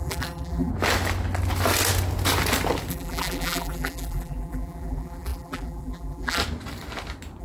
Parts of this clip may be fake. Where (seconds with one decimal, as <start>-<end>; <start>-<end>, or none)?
0.0-0.7; 2.9-6.4